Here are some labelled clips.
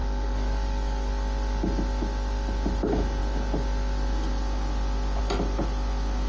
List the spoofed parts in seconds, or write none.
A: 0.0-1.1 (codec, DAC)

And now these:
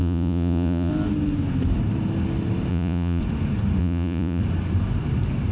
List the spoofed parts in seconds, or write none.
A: 0.0-0.9 (vocoder, Vocos); 2.7-3.2; 3.8-4.4

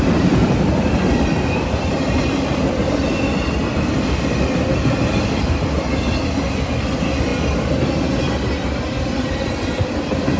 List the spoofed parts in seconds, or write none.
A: none